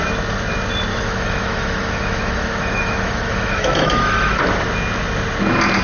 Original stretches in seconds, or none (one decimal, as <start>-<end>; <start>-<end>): 0.0-0.9; 4.4-5.8